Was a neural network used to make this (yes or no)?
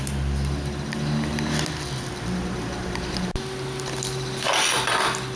no